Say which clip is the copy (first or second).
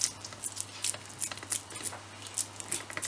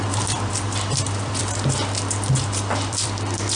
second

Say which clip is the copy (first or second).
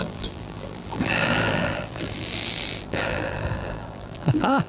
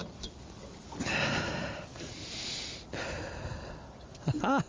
first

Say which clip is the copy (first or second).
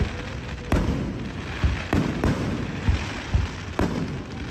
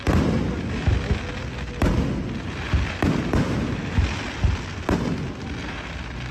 first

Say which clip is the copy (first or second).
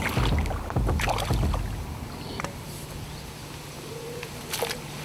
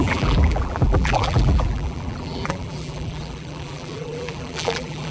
second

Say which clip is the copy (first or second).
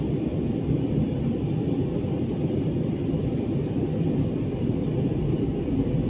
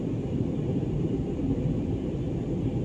second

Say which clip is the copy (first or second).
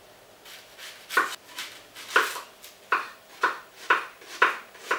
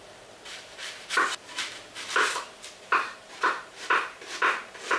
second